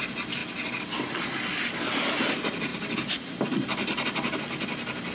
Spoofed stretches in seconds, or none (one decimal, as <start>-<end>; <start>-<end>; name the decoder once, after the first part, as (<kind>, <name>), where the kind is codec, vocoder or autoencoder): none